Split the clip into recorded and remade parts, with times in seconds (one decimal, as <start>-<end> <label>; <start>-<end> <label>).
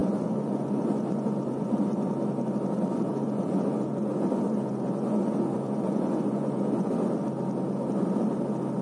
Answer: 0.0-2.1 remade; 2.1-3.1 recorded; 3.1-6.9 remade; 6.9-8.8 recorded